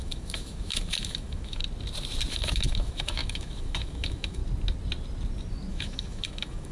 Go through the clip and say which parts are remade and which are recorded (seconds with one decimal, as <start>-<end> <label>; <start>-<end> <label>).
0.0-1.6 remade; 1.6-2.3 recorded; 2.3-4.4 remade; 4.4-5.7 recorded; 5.7-6.7 remade